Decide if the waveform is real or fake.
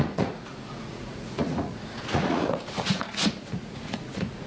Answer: fake